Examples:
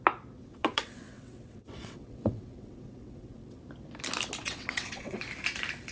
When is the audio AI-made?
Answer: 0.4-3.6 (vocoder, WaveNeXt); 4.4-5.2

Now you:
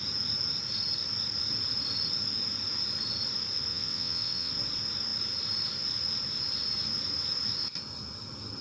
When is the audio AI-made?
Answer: 3.7-4.5 (vocoder, WaveNeXt)

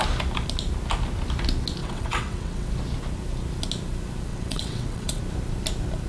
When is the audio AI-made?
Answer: 1.8-2.7 (vocoder, WaveNeXt); 4.3-5.2

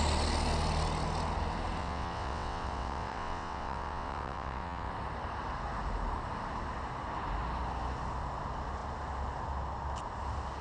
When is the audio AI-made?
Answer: 1.8-4.9 (vocoder, WaveNeXt)